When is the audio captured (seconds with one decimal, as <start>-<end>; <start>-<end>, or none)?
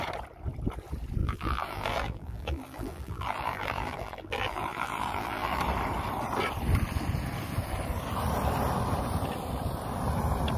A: 0.0-1.2; 5.6-10.6